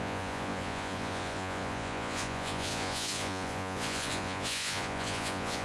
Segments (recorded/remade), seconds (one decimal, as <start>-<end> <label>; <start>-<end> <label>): 0.0-5.6 remade